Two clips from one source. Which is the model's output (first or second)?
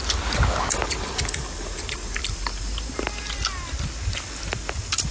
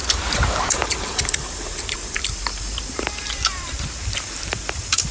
second